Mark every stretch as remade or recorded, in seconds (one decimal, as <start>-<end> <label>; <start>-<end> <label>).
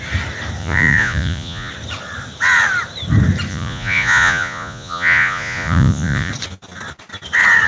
0.0-0.6 recorded; 0.6-1.7 remade; 1.7-3.5 recorded; 3.5-6.3 remade; 6.3-7.7 recorded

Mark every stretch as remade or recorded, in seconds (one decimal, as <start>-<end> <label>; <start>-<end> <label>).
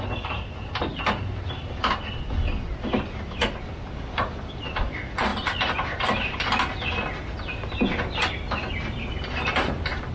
0.0-10.1 remade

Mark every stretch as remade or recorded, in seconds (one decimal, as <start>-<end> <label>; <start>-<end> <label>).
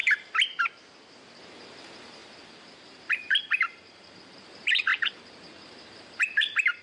0.0-1.4 recorded; 1.4-6.8 remade